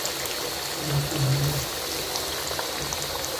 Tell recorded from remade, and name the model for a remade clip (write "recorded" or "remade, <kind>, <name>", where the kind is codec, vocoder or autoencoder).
recorded